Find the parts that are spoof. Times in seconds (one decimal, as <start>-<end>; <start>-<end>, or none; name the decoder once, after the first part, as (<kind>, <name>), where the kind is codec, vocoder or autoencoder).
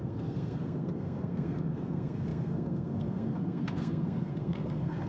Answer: 0.0-5.1 (codec, SNAC)